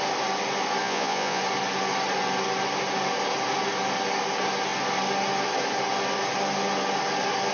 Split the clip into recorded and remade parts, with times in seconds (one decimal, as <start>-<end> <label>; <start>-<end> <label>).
0.0-0.8 recorded; 0.8-1.4 remade; 1.4-7.5 recorded